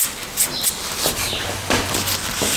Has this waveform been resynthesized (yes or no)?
no